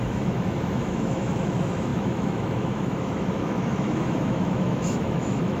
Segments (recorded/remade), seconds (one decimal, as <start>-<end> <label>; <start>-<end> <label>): 0.0-5.6 remade